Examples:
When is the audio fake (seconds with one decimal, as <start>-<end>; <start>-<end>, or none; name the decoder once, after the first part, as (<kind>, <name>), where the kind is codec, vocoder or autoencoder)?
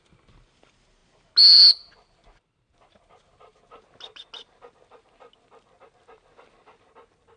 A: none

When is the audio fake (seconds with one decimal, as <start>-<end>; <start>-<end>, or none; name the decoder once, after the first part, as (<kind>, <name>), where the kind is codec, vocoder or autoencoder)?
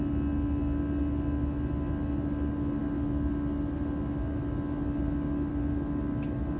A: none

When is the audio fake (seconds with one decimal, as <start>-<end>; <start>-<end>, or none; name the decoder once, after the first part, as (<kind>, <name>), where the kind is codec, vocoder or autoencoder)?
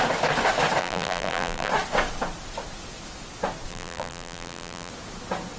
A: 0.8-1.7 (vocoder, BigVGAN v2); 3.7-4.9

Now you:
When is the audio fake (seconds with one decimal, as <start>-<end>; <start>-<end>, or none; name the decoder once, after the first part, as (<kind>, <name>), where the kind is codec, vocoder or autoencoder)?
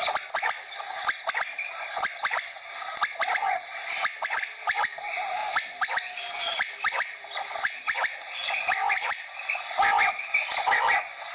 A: 5.4-6.2 (vocoder, BigVGAN v2); 8.4-9.6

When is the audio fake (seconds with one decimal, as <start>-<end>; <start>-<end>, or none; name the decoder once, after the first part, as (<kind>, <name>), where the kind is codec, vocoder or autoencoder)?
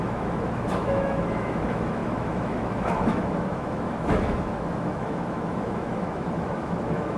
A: 0.0-7.2 (autoencoder, DAC-VAE)